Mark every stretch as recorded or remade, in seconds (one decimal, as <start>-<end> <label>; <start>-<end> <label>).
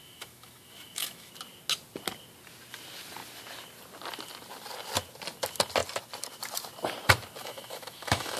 0.0-1.3 remade; 1.3-7.4 recorded; 7.4-8.4 remade